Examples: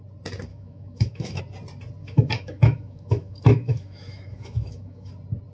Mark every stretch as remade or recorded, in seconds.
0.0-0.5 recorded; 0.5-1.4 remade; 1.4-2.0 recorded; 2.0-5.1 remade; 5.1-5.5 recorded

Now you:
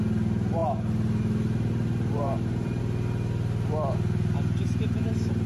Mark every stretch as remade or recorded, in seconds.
0.0-0.6 recorded; 0.6-2.8 remade; 2.8-5.5 recorded

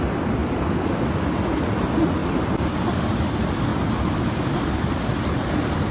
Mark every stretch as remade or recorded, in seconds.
0.0-5.9 recorded

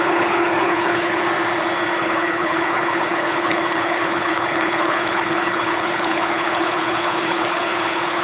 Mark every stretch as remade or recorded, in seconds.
0.0-1.2 remade; 1.2-2.0 recorded; 2.0-8.2 remade

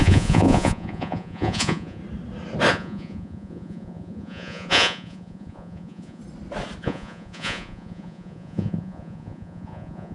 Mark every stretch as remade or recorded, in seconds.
0.0-2.0 remade; 2.0-2.7 recorded; 2.7-6.2 remade; 6.2-6.8 recorded; 6.8-10.1 remade